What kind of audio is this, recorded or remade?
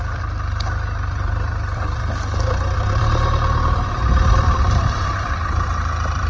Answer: remade